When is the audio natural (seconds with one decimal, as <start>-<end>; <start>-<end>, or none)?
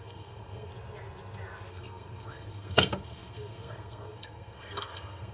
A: 0.7-1.7